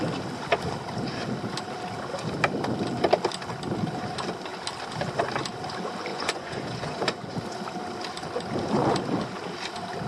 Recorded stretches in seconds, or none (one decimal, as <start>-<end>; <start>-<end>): 0.0-6.1; 7.3-10.1

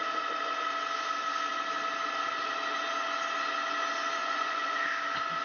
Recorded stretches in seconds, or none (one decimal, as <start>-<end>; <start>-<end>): 0.0-4.2; 4.8-5.4

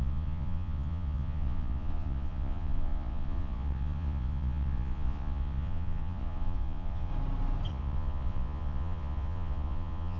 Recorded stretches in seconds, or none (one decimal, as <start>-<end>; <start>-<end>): 7.1-7.7

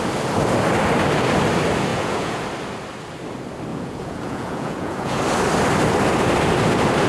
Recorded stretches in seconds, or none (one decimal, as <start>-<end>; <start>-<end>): 0.0-1.9; 2.4-3.7; 5.2-7.1

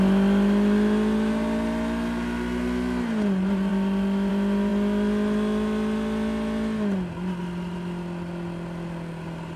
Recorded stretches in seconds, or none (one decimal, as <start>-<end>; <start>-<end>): 0.0-9.6

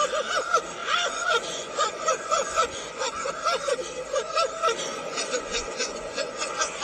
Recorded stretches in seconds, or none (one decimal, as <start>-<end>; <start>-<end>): 0.0-0.8; 3.3-4.9

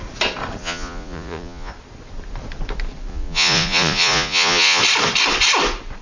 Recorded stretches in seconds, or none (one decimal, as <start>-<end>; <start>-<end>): 0.0-0.6; 1.7-3.1; 4.8-6.0